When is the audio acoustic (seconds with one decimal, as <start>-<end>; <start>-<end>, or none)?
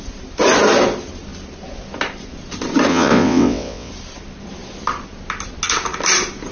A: 0.0-2.9; 3.9-6.5